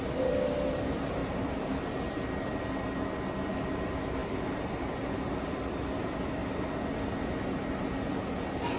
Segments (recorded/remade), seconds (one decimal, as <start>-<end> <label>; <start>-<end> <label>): 0.0-8.8 recorded